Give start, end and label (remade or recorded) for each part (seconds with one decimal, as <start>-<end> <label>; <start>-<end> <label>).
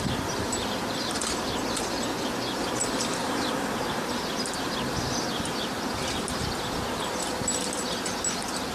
0.0-3.2 recorded; 3.2-4.1 remade; 4.1-8.7 recorded